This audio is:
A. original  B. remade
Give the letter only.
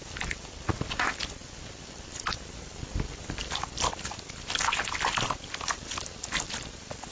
B